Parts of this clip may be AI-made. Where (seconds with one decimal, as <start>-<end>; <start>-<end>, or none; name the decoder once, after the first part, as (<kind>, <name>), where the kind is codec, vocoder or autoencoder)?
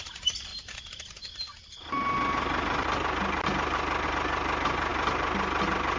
none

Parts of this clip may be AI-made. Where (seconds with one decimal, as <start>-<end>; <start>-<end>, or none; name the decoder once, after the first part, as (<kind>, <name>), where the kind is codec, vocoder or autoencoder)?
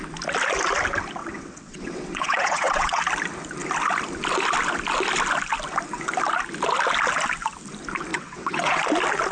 1.2-3.0 (vocoder, WaveNeXt); 8.1-8.8